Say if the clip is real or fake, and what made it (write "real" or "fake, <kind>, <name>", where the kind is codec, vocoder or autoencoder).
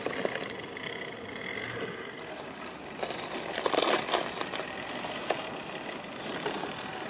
real